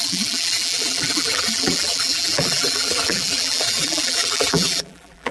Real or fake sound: fake